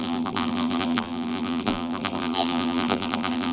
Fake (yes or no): yes